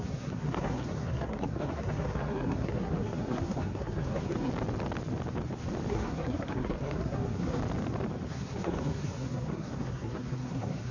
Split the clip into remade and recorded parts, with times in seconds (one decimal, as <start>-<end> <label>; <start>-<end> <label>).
0.0-4.5 remade; 4.5-5.9 recorded; 5.9-7.6 remade; 7.6-8.3 recorded; 8.3-10.9 remade